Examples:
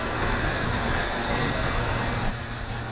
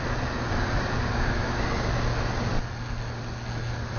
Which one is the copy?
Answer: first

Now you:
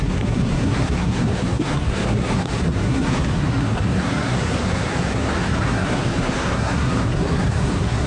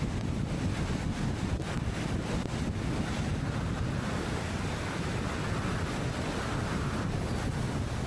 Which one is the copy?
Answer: first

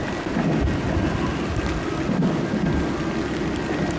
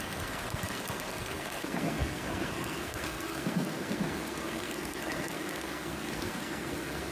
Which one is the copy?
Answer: second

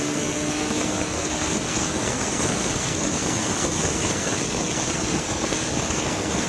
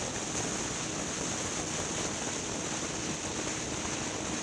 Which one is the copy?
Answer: first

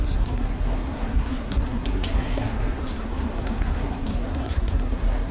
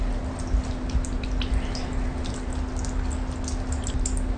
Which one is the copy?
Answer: first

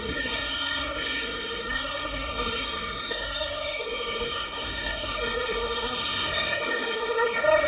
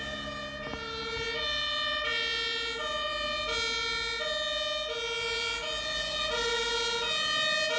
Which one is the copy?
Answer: first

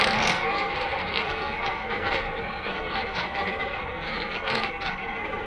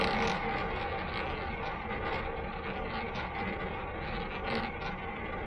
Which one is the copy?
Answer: first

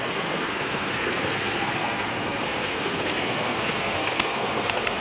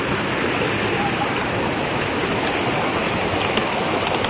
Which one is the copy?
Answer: first